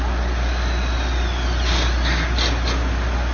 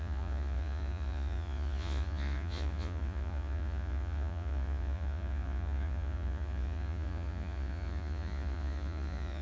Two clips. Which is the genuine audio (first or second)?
first